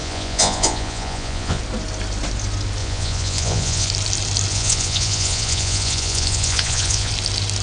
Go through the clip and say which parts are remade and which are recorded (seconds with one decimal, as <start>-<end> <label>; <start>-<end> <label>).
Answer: 0.0-1.6 remade; 1.6-2.8 recorded; 2.8-3.9 remade; 3.9-4.5 recorded; 4.5-7.1 remade; 7.1-7.6 recorded